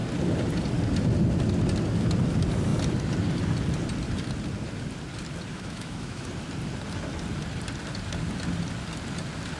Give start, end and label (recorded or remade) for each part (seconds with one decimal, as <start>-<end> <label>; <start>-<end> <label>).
0.0-5.5 recorded; 5.5-6.3 remade; 6.3-9.6 recorded